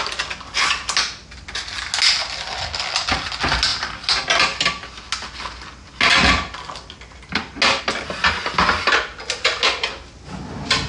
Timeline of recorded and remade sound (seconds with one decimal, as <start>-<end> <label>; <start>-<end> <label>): 0.0-10.9 recorded